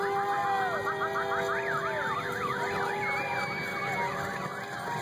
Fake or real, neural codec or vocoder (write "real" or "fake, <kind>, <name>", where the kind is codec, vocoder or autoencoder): real